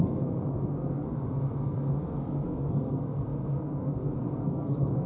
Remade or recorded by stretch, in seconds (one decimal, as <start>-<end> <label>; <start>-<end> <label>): 0.0-5.1 remade